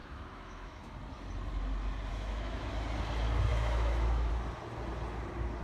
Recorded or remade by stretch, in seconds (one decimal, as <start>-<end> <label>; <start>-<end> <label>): 0.0-0.9 remade; 0.9-2.1 recorded; 2.1-2.7 remade; 2.7-3.5 recorded; 3.5-4.3 remade; 4.3-5.6 recorded

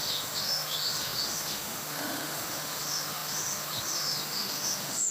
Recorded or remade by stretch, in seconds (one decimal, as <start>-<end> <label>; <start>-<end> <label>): 0.0-5.1 remade

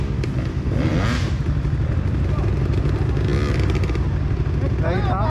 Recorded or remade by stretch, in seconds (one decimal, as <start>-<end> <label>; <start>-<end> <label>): 0.0-5.3 recorded

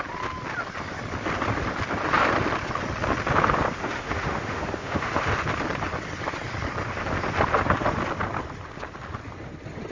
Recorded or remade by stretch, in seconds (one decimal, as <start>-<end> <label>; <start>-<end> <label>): 0.0-3.8 recorded; 3.8-5.2 remade; 5.2-9.9 recorded

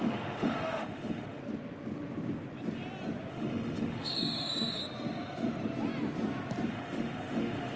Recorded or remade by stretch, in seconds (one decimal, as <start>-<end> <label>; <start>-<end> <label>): 0.0-1.4 remade; 1.4-3.3 recorded; 3.3-4.8 remade; 4.8-6.7 recorded; 6.7-7.8 remade

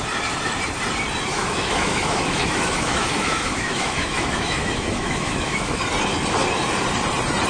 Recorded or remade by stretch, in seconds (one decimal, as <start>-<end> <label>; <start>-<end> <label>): 0.0-1.3 recorded; 1.3-5.8 remade; 5.8-7.5 recorded